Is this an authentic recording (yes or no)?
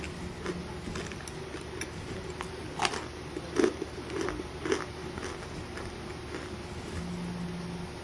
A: yes